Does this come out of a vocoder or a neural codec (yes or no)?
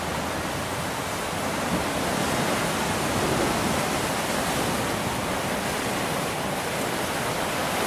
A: no